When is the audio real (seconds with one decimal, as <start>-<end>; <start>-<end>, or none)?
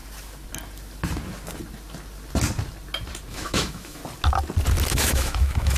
0.0-3.3; 4.0-4.9